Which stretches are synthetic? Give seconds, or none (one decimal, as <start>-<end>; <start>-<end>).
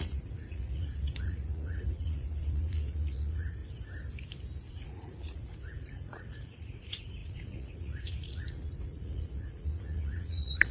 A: 0.0-3.6; 4.7-10.7